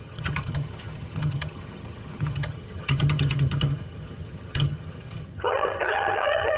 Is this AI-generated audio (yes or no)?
yes